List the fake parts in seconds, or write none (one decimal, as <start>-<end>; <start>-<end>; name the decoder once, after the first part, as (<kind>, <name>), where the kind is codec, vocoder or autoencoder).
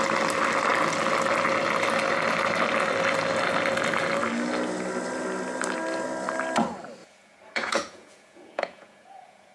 7.0-9.5 (vocoder, Vocos)